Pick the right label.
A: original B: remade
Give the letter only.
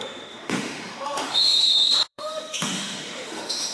B